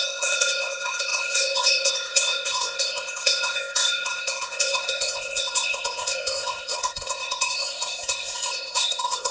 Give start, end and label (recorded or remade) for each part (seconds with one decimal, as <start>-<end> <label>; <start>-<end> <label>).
0.0-9.3 remade

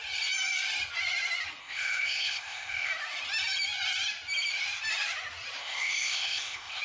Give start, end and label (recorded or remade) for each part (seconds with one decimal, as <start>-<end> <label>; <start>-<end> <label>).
0.0-1.6 recorded; 1.6-2.9 remade; 2.9-5.6 recorded; 5.6-6.8 remade